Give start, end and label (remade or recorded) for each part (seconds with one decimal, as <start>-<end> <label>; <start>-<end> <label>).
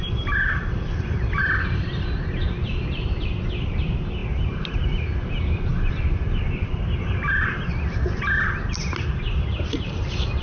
0.0-10.4 recorded